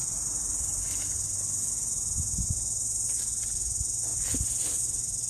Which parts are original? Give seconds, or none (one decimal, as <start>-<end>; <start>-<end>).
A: 0.0-5.3